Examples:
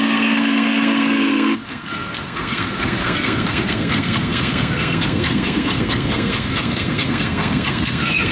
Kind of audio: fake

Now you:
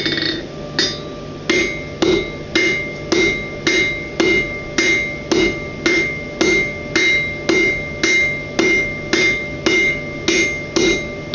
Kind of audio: real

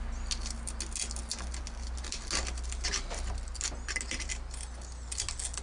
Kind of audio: real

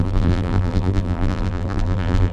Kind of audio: fake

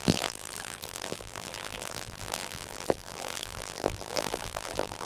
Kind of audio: fake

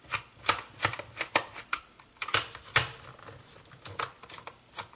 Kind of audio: real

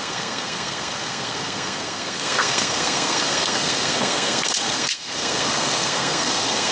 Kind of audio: fake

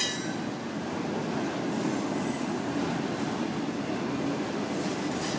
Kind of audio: real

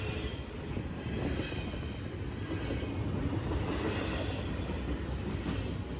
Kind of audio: real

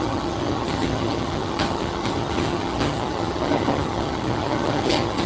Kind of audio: fake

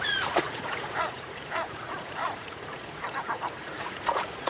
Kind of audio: fake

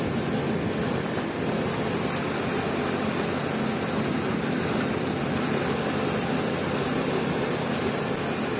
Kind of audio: real